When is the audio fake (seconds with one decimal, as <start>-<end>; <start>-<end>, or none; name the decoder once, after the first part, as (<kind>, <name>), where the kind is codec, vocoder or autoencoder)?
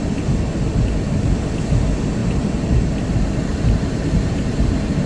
2.2-2.9 (vocoder, BigVGAN v2); 3.5-5.1